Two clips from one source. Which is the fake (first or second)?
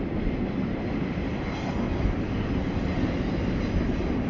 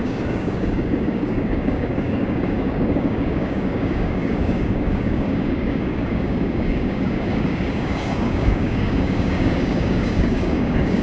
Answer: second